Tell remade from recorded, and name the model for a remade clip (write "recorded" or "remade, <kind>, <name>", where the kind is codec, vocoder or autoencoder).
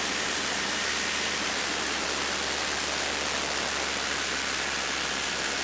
recorded